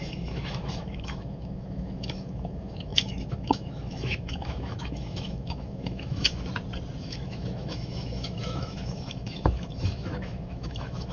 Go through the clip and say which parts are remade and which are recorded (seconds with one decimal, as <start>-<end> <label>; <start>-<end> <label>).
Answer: 0.0-6.5 remade; 6.5-7.0 recorded; 7.0-11.1 remade